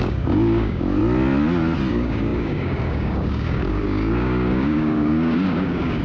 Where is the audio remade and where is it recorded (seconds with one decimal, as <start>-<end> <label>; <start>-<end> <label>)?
0.0-1.0 remade; 1.0-1.9 recorded; 1.9-6.0 remade